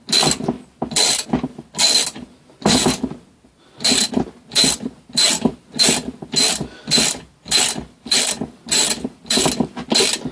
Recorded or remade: recorded